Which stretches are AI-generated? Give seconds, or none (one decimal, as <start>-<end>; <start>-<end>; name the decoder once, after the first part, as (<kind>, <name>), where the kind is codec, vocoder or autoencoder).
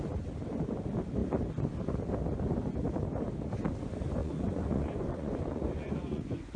4.2-6.6 (vocoder, Vocos)